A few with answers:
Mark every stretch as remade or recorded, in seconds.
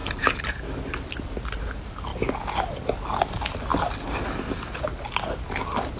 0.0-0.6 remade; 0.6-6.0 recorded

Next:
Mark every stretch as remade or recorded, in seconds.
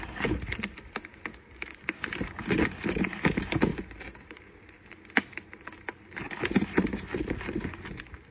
0.0-1.3 recorded; 1.3-2.0 remade; 2.0-8.3 recorded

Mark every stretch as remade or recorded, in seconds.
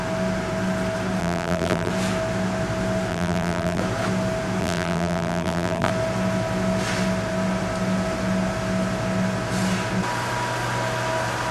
0.0-1.2 recorded; 1.2-1.9 remade; 1.9-3.1 recorded; 3.1-3.8 remade; 3.8-4.6 recorded; 4.6-5.9 remade; 5.9-11.5 recorded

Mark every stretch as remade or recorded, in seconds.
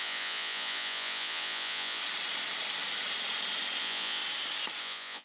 0.0-2.0 remade; 2.0-3.8 recorded; 3.8-4.2 remade; 4.2-4.8 recorded; 4.8-5.2 remade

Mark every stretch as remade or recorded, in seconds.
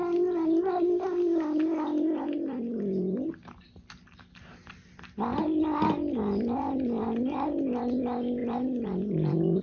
0.0-9.6 recorded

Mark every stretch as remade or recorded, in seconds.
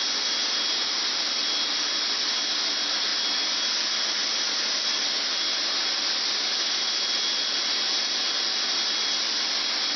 0.0-10.0 recorded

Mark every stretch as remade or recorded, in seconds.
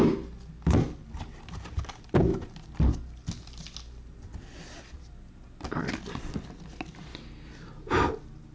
0.0-8.5 recorded